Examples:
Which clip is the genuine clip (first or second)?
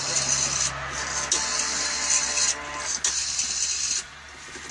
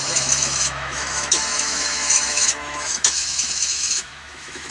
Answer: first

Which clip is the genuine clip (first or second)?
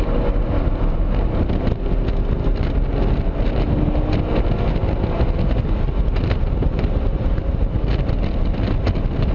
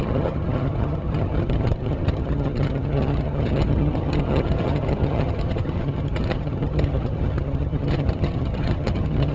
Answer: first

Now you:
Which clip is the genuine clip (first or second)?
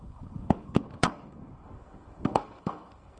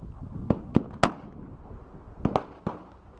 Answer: second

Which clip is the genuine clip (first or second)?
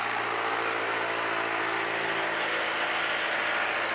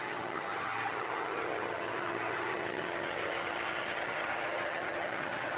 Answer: first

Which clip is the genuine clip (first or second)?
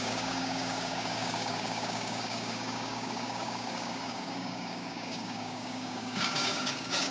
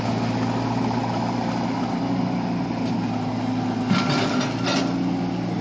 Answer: second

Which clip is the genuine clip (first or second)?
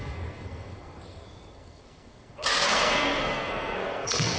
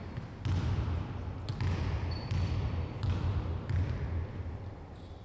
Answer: second